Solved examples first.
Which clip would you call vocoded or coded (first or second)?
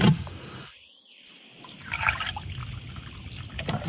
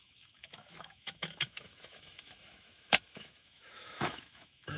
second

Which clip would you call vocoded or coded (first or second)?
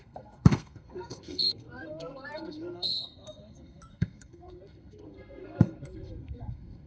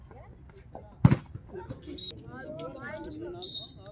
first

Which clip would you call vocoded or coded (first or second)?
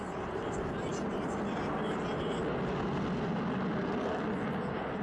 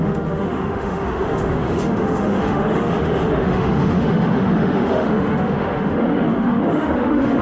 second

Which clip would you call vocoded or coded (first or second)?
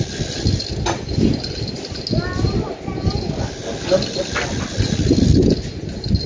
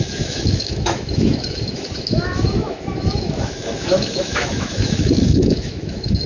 second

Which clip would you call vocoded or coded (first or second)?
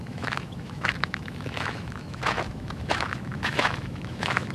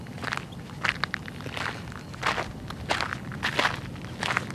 first